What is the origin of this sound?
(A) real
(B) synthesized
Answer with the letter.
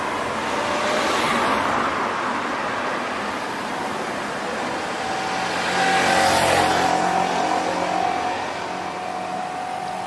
A